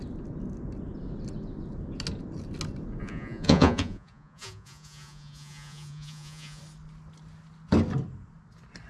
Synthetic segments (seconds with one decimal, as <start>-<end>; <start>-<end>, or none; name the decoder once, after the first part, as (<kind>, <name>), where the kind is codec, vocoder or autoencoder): 3.0-6.6 (vocoder, Vocos)

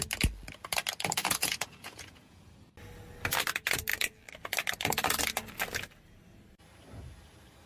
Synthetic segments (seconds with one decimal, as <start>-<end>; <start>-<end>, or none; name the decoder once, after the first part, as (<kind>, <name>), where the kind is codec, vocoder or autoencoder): 1.2-2.5 (vocoder, Vocos)

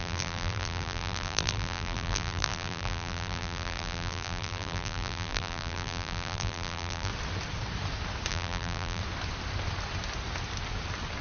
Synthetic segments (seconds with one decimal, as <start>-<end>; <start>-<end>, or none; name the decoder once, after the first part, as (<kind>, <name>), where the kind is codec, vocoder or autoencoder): 0.0-7.1 (vocoder, BigVGAN v2); 8.3-9.0

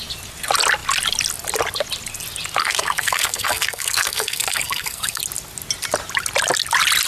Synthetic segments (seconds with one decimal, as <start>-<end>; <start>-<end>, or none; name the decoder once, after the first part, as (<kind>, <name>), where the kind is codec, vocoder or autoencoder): 2.6-5.2 (codec, SNAC)